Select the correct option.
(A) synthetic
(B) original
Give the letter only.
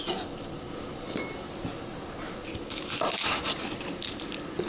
B